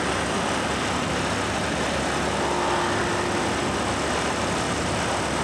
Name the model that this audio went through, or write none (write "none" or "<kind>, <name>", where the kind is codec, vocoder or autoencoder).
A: none